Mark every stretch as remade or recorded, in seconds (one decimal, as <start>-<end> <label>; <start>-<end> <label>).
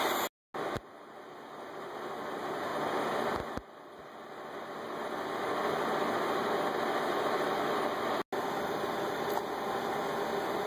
0.0-10.7 recorded